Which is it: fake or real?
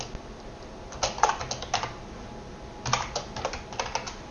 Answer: real